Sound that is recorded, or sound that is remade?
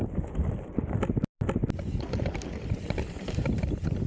recorded